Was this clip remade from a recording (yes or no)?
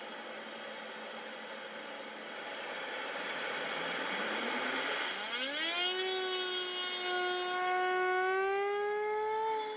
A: no